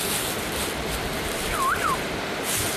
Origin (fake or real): real